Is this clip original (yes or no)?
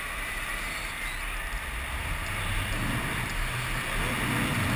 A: yes